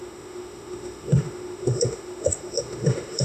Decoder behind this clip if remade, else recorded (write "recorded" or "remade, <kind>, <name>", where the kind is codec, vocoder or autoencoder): remade, autoencoder, DAC-VAE